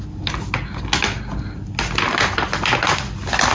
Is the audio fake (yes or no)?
no